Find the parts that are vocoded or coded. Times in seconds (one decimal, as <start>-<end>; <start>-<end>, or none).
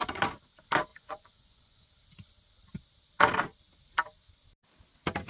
0.9-1.9